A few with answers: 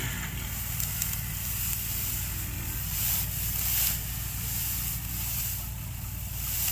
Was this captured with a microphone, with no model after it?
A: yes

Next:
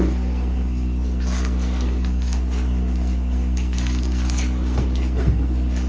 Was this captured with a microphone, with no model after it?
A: no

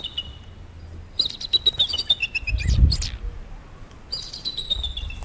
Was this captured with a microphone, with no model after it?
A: yes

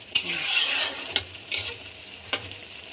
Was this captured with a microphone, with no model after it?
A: no